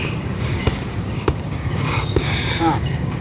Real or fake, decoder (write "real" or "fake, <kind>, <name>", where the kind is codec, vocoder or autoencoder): fake, codec, DAC